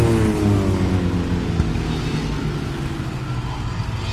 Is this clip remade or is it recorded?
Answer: recorded